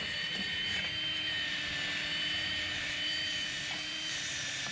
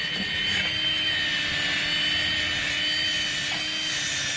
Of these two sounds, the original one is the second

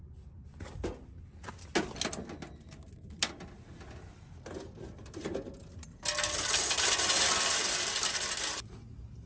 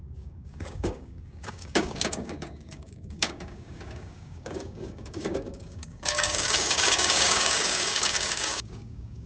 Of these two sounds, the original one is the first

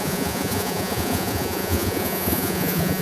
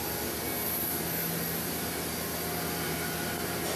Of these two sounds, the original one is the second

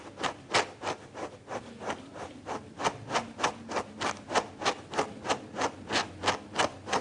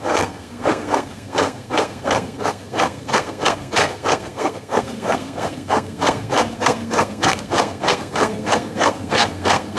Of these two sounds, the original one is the first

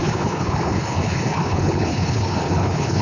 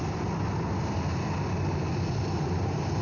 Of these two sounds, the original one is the second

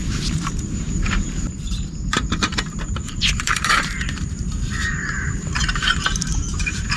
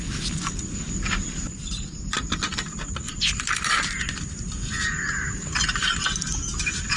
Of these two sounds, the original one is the second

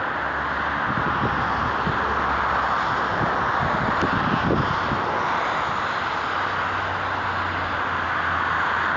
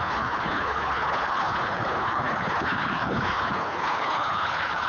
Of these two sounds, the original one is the first